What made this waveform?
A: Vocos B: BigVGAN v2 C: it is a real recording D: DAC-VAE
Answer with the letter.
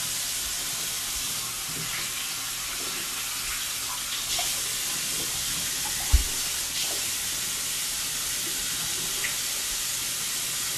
C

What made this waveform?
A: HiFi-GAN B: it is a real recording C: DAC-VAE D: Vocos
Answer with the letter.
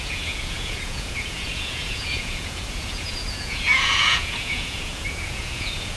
D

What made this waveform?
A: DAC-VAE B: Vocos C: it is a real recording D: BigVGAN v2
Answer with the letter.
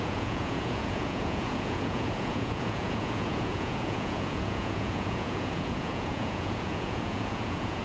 B